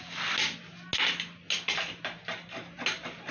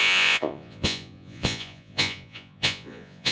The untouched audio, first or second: first